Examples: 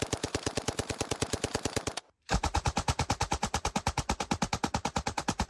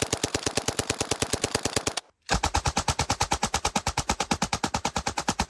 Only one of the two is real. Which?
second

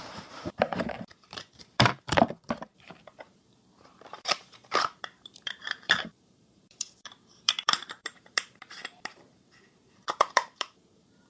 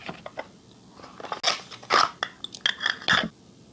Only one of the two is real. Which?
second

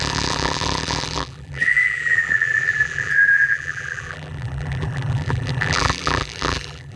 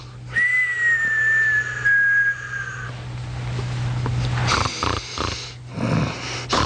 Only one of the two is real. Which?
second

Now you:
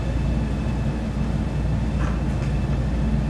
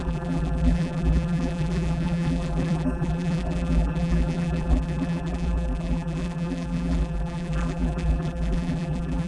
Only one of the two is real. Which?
first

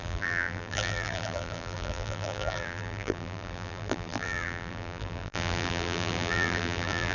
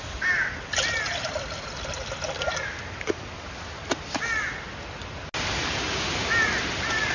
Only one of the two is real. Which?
second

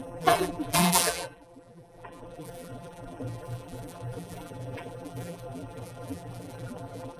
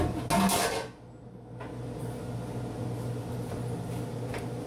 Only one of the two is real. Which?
second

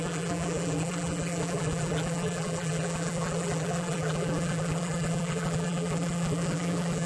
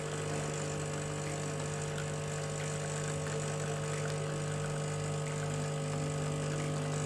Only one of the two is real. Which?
second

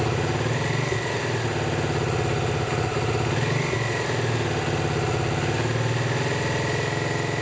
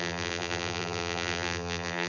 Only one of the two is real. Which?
first